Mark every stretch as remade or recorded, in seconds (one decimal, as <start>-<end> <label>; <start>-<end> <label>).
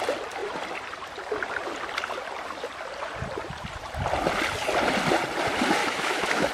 0.0-5.8 recorded; 5.8-6.5 remade